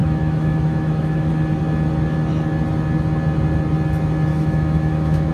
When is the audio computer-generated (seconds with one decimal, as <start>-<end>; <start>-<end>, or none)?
0.0-1.3; 4.3-5.3